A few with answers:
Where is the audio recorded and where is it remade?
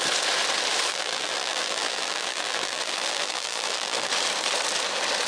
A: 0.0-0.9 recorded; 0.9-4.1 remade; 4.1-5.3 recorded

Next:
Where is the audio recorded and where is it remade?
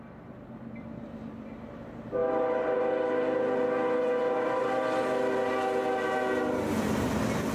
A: 0.0-7.5 recorded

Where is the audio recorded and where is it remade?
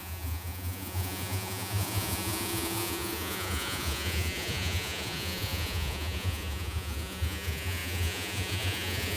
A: 0.0-9.2 remade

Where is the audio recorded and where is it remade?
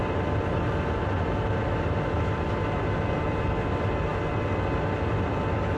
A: 0.0-5.8 recorded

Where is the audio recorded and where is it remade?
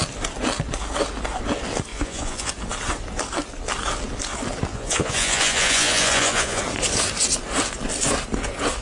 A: 0.0-1.9 recorded; 1.9-2.5 remade; 2.5-4.7 recorded; 4.7-6.6 remade; 6.6-8.8 recorded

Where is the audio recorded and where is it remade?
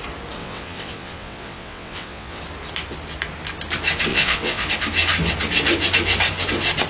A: 0.0-0.4 recorded; 0.4-2.4 remade; 2.4-4.1 recorded; 4.1-4.7 remade; 4.7-6.9 recorded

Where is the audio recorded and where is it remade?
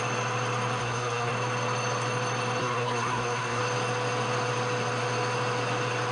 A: 0.0-0.8 recorded; 0.8-1.3 remade; 1.3-2.6 recorded; 2.6-3.6 remade; 3.6-6.1 recorded